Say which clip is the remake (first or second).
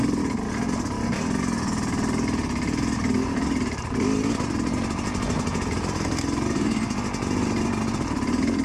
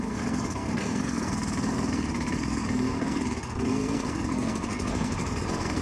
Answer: second